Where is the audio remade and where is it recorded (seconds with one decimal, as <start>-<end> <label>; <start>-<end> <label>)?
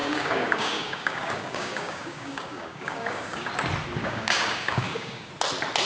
0.0-3.5 remade; 3.5-4.0 recorded; 4.0-5.3 remade; 5.3-5.8 recorded